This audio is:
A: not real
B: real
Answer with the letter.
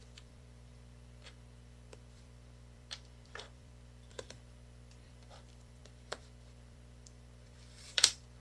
A